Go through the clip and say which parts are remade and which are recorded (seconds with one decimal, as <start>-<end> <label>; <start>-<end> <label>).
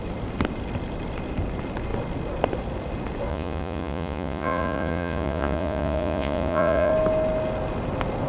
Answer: 0.0-3.3 recorded; 3.3-6.9 remade; 6.9-8.3 recorded